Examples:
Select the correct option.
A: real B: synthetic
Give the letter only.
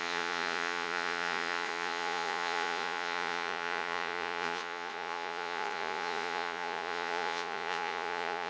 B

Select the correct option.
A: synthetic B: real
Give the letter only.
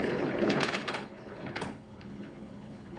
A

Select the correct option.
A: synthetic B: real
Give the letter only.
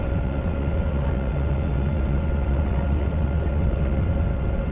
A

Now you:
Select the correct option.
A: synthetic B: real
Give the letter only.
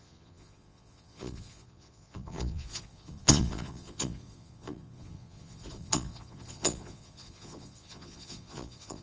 A